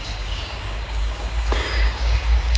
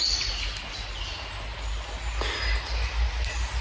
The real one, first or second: second